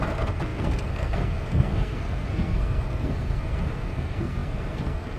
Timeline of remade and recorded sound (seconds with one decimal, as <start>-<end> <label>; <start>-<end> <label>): 0.0-5.2 remade